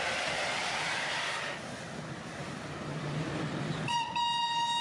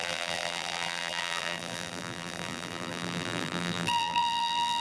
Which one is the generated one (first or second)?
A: second